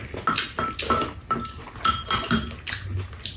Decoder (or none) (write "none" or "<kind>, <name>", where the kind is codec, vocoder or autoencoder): none